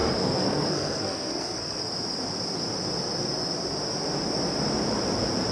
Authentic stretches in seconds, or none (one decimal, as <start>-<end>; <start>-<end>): 1.8-5.5